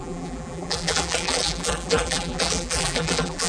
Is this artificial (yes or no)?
yes